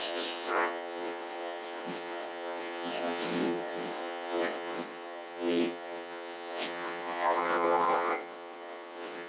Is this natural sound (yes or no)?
no